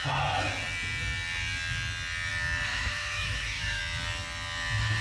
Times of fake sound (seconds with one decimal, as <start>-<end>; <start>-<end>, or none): 2.7-3.8